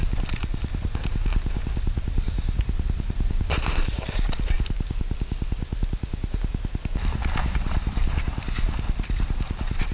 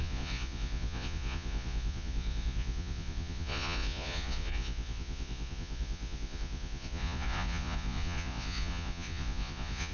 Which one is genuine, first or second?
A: first